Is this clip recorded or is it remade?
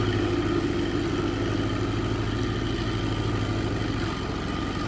recorded